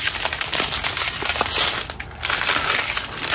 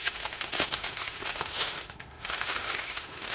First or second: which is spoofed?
second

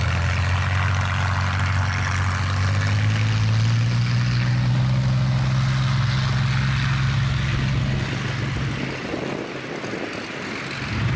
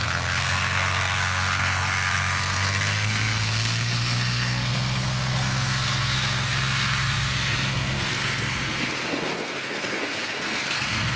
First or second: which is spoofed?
second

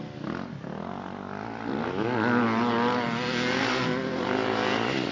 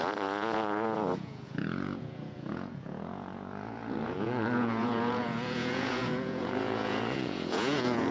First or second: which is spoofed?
second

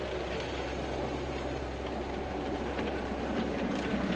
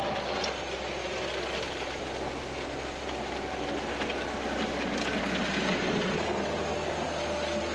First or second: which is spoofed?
first